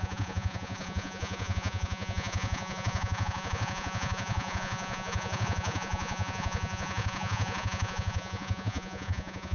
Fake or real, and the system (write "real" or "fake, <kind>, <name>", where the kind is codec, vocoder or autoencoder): fake, vocoder, Vocos